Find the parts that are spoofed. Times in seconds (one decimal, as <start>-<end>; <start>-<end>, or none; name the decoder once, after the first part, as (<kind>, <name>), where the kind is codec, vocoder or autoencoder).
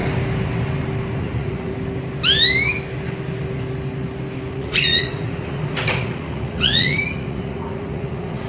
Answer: 1.2-1.7 (vocoder, Vocos); 4.5-8.5